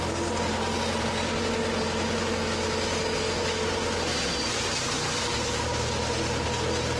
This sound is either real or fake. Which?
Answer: real